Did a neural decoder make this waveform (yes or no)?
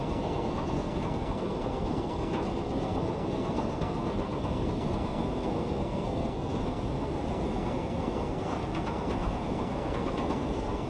yes